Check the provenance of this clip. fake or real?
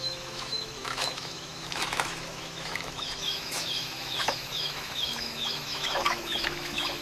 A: fake